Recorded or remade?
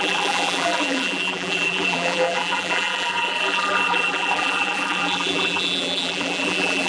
remade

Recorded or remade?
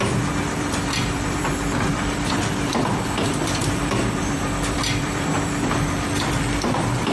remade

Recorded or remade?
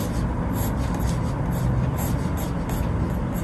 recorded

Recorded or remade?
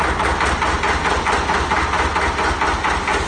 recorded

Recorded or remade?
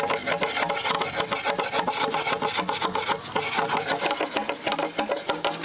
recorded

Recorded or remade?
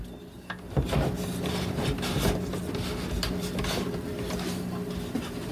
recorded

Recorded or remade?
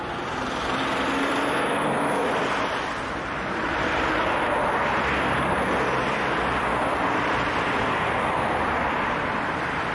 remade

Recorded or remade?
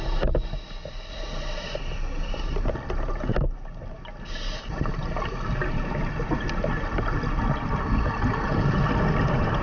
recorded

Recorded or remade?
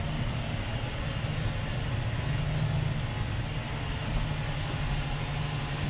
recorded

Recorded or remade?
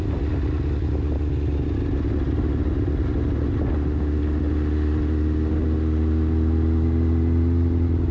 recorded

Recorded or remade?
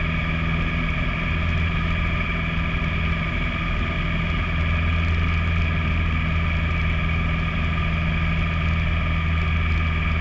recorded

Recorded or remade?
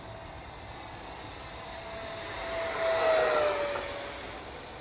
recorded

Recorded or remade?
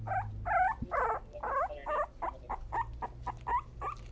recorded